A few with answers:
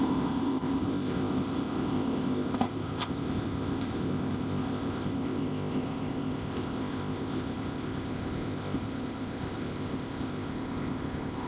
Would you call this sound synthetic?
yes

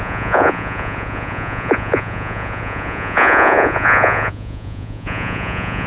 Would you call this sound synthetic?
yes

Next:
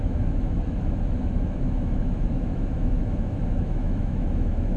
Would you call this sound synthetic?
yes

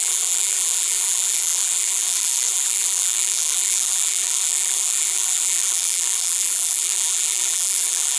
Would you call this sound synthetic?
yes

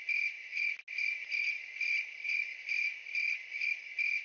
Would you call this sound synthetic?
no